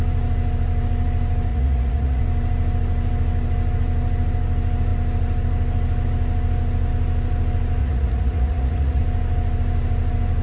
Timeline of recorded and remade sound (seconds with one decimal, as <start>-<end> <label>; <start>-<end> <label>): 0.0-1.5 recorded; 1.5-2.2 remade; 2.2-7.8 recorded; 7.8-9.0 remade; 9.0-10.4 recorded